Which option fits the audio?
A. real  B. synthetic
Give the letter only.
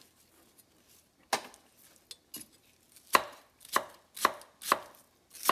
A